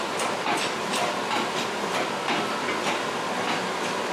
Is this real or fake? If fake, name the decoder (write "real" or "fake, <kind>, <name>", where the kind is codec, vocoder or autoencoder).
real